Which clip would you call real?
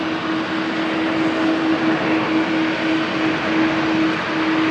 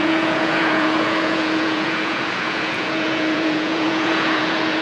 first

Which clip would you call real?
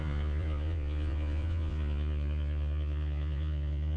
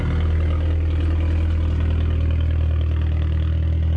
second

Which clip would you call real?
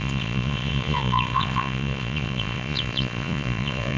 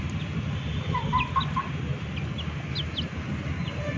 second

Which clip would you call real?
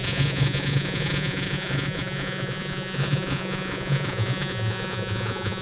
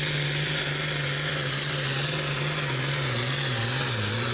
second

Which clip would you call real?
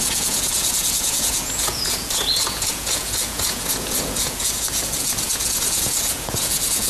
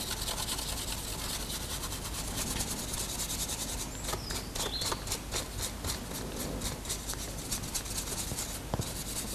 second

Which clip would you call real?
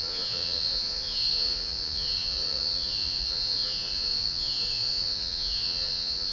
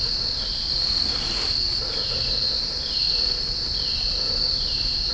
second